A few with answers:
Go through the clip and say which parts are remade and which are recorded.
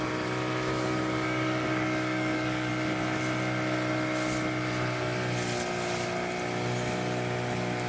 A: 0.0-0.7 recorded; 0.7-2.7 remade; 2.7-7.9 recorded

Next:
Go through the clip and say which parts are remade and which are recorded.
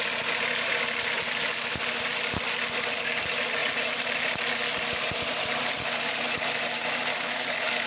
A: 0.0-7.1 recorded; 7.1-7.9 remade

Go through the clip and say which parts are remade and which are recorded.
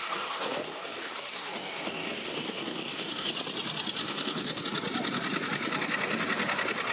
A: 0.0-3.3 remade; 3.3-4.0 recorded; 4.0-4.6 remade; 4.6-6.9 recorded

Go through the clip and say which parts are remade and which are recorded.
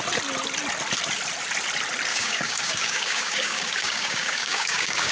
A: 0.0-2.1 recorded; 2.1-5.1 remade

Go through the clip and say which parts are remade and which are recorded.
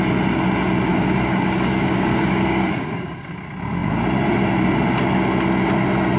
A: 0.0-0.9 recorded; 0.9-3.3 remade; 3.3-6.2 recorded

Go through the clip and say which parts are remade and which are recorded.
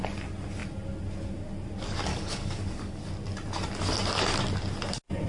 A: 0.0-2.1 recorded; 2.1-3.0 remade; 3.0-5.3 recorded